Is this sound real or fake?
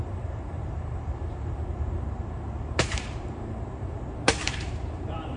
fake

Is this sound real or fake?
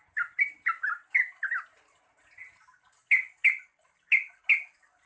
real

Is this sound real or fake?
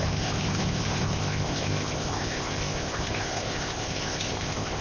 fake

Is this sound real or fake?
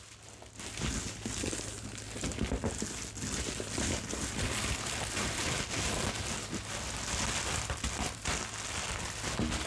real